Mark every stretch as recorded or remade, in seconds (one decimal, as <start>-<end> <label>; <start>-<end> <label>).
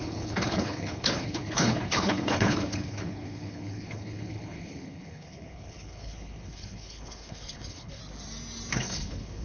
0.0-8.0 remade; 8.0-8.7 recorded; 8.7-9.4 remade